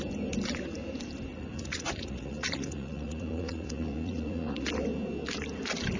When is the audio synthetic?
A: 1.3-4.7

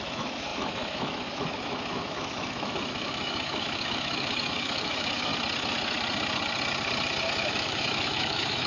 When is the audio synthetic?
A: 0.0-5.3; 7.5-8.7

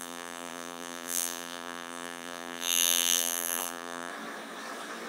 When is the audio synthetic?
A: 0.0-4.1

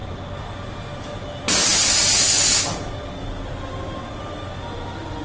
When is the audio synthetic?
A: none

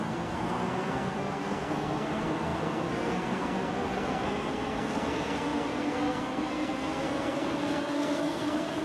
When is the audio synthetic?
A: 0.0-8.8

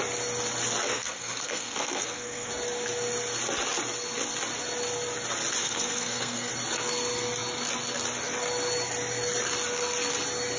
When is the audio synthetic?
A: 0.9-2.5; 5.6-6.5